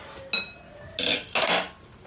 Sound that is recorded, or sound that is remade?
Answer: recorded